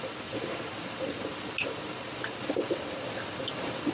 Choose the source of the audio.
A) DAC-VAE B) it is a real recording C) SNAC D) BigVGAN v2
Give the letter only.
B